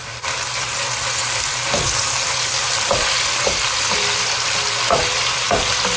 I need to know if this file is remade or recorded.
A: remade